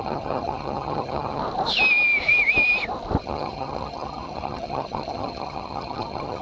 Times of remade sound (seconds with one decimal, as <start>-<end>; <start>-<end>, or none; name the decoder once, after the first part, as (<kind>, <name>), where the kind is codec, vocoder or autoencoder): 0.0-1.4 (vocoder, HiFi-GAN); 3.2-6.4